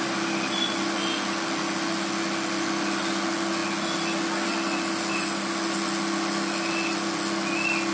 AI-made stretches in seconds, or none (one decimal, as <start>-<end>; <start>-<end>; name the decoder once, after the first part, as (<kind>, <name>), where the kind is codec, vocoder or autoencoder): none